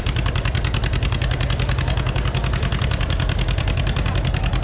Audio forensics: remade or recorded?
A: recorded